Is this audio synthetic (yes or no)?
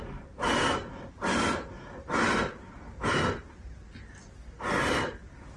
no